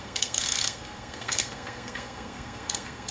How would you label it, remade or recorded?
remade